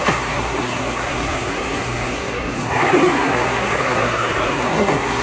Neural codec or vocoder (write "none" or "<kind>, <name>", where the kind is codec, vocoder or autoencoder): codec, SNAC